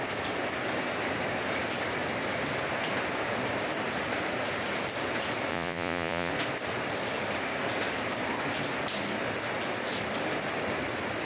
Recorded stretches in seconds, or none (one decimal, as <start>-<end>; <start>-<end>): 0.0-5.5; 6.3-11.3